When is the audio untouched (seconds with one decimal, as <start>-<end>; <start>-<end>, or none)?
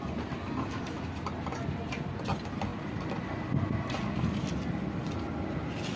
0.0-6.0